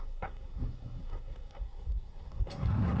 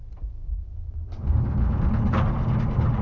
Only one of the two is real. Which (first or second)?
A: second